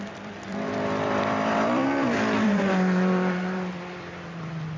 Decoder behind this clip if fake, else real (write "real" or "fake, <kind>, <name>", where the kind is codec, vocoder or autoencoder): fake, vocoder, BigVGAN v2